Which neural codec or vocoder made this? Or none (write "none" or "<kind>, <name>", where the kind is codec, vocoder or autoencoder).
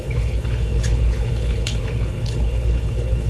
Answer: codec, HILCodec